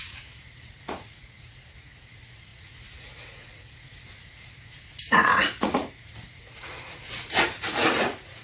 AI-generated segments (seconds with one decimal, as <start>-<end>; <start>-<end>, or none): 0.0-8.4